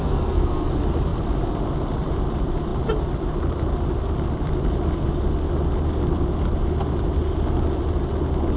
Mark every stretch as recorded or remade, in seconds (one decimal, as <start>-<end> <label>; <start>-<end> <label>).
0.0-0.7 remade; 0.7-8.6 recorded